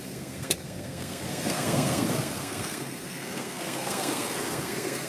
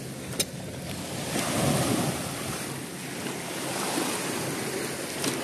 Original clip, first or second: second